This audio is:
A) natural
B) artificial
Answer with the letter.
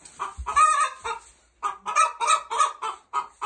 A